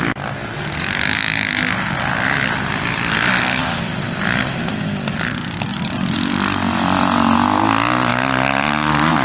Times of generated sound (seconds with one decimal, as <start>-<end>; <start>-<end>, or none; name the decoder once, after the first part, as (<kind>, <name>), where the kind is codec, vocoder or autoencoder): 3.6-4.4 (vocoder, BigVGAN v2); 8.1-8.7